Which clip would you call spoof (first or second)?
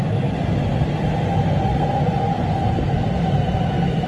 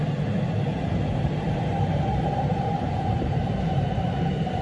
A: second